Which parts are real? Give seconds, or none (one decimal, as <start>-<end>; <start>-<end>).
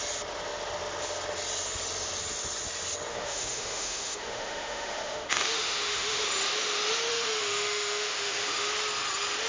0.0-3.1; 6.2-7.1; 8.7-9.5